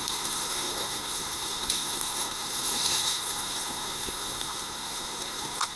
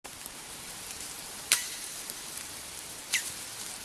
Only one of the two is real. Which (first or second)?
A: second